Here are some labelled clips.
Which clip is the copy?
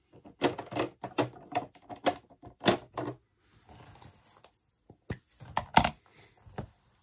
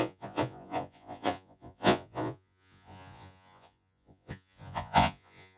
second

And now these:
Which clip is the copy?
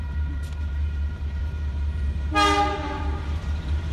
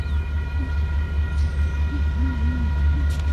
first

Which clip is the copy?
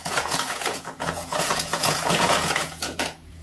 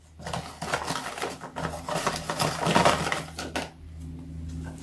first